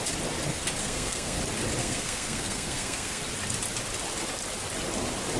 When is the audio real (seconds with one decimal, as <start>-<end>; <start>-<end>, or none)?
0.0-0.8; 1.4-1.8; 3.2-5.4